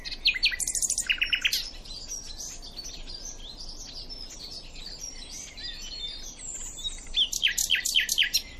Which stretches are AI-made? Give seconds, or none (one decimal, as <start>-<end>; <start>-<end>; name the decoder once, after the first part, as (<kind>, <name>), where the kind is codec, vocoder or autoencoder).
7.6-8.1 (vocoder, BigVGAN v2)